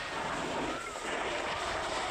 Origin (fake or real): real